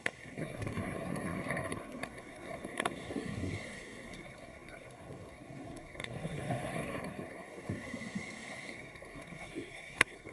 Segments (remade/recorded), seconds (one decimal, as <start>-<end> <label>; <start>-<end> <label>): 0.0-10.3 remade